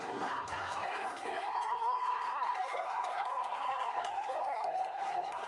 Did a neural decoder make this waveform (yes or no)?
yes